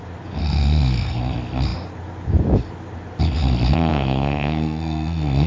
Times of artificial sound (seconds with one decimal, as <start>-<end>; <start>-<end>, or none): 0.4-1.2; 3.9-5.5